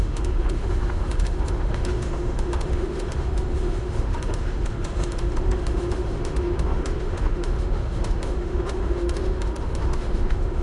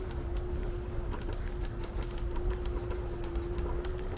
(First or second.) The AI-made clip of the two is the first